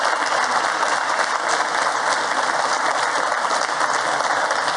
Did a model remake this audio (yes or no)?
no